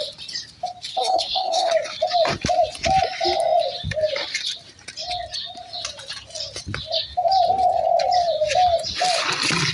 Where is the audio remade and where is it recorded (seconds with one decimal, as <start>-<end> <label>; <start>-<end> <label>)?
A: 0.0-0.9 recorded; 0.9-1.7 remade; 1.7-9.7 recorded